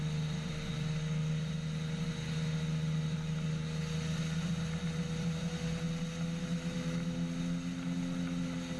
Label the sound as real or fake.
real